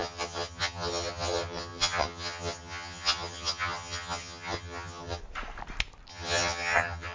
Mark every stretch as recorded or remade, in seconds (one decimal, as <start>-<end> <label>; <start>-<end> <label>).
0.0-5.2 remade; 5.2-6.1 recorded; 6.1-7.1 remade